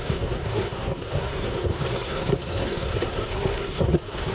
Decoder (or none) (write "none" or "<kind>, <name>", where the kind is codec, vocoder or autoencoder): codec, SNAC